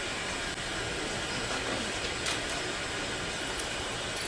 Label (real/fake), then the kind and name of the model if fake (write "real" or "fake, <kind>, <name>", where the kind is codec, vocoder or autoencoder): real